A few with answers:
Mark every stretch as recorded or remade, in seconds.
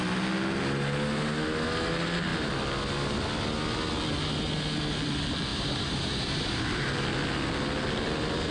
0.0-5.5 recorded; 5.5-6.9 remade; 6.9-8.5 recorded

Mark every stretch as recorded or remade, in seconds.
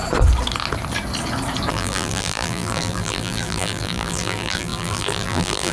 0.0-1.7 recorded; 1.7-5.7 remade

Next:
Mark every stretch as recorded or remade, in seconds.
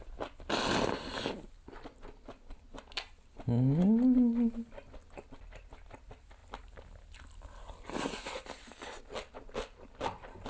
0.0-10.5 recorded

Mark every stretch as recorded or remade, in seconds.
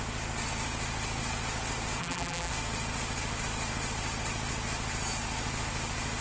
0.0-2.0 recorded; 2.0-2.5 remade; 2.5-6.2 recorded